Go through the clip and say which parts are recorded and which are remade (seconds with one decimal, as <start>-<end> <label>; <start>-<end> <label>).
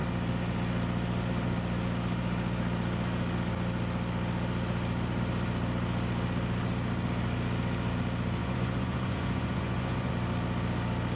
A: 0.0-8.4 recorded; 8.4-10.1 remade; 10.1-11.2 recorded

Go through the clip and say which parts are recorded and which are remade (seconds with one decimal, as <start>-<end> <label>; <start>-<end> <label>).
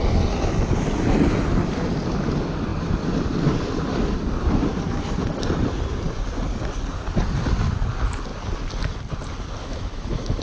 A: 0.0-9.6 recorded; 9.6-10.4 remade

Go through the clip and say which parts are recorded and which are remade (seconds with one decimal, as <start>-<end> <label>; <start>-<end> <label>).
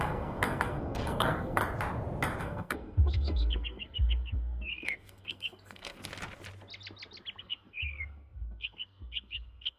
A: 0.0-1.6 remade; 1.6-2.4 recorded; 2.4-6.0 remade; 6.0-7.4 recorded; 7.4-9.8 remade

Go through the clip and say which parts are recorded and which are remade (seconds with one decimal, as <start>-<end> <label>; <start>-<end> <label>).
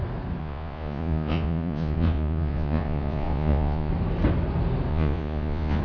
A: 0.0-0.4 recorded; 0.4-3.9 remade; 3.9-4.9 recorded; 4.9-5.8 remade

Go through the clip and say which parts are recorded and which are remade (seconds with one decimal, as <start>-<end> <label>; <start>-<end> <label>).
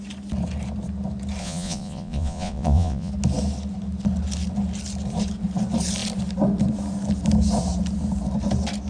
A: 0.0-1.4 recorded; 1.4-3.1 remade; 3.1-8.9 recorded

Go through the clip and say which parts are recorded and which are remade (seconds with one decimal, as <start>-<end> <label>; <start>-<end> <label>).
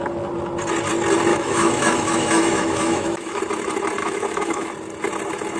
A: 0.0-1.3 recorded; 1.3-3.4 remade; 3.4-4.0 recorded; 4.0-4.7 remade; 4.7-5.6 recorded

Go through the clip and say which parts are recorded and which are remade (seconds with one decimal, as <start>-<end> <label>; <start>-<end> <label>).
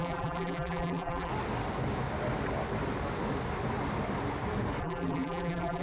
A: 0.0-1.3 remade; 1.3-4.8 recorded; 4.8-5.8 remade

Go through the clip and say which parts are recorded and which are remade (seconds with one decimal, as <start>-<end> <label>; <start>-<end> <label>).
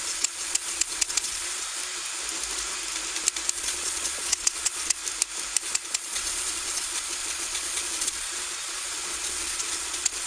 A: 0.0-1.8 remade; 1.8-3.5 recorded; 3.5-5.0 remade; 5.0-5.6 recorded; 5.6-10.3 remade